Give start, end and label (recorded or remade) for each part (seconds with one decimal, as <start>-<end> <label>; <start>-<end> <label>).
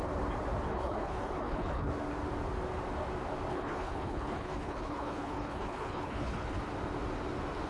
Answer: 0.0-0.7 recorded; 0.7-1.9 remade; 1.9-3.5 recorded; 3.5-6.6 remade; 6.6-7.7 recorded